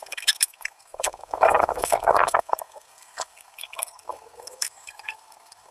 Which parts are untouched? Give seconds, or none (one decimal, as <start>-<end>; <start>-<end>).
none